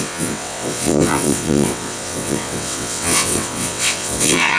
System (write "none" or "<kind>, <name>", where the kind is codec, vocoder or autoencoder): vocoder, WaveNeXt